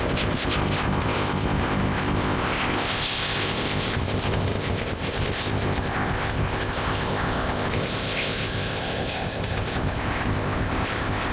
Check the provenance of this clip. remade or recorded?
remade